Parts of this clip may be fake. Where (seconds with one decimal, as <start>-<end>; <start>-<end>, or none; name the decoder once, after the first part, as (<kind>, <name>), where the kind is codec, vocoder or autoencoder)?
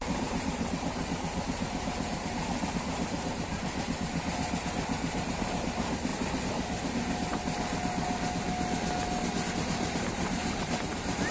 0.0-6.1 (vocoder, BigVGAN v2); 9.5-11.3